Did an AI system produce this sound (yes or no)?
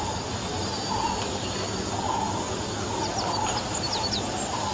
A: no